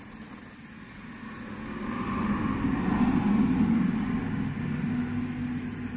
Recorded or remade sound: recorded